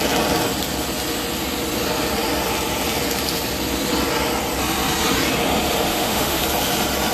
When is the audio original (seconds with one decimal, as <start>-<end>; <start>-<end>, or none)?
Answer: 0.0-5.9; 6.4-7.1